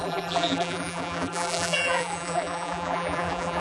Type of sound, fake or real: fake